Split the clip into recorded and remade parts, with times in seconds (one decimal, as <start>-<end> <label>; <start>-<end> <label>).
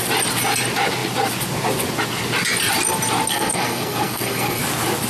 0.0-3.3 recorded; 3.3-4.6 remade; 4.6-5.1 recorded